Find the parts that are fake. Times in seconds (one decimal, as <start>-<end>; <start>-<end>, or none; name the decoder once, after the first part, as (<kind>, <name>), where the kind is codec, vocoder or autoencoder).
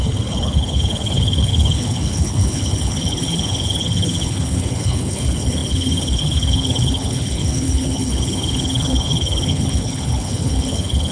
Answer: 0.0-11.1 (codec, HILCodec)